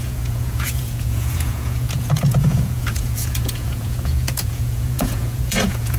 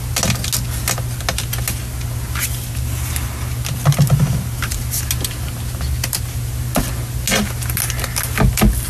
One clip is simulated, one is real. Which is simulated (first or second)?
first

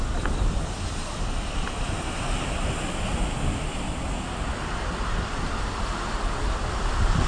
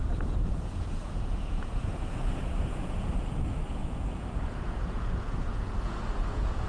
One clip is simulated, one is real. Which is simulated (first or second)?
second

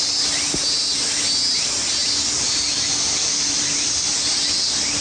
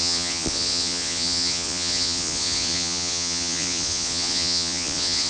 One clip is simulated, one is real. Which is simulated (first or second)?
second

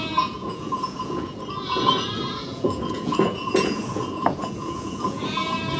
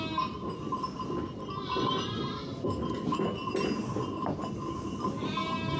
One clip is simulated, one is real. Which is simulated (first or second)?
first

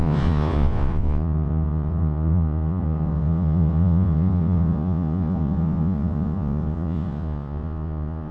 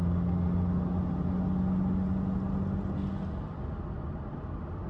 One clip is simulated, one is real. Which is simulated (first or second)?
first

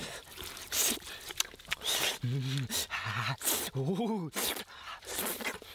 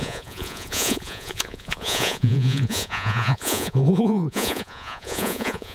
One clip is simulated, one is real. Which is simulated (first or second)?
second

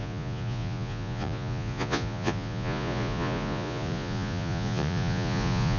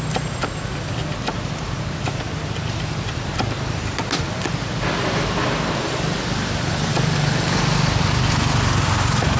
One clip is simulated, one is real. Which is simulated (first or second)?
first